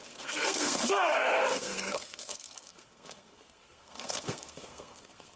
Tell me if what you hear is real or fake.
fake